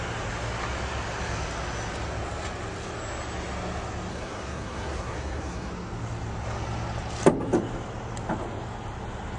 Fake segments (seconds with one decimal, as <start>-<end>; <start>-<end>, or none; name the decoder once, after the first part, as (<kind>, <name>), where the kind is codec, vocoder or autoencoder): 4.1-5.7 (codec, SNAC)